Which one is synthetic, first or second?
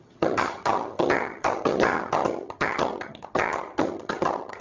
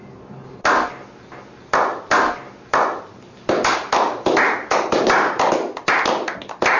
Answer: first